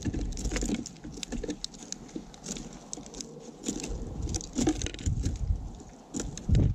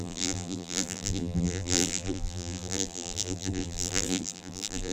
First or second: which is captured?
first